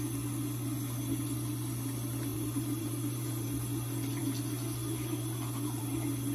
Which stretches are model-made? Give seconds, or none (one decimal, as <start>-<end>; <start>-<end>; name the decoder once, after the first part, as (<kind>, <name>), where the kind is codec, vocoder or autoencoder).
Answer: 2.3-3.6 (vocoder, BigVGAN v2)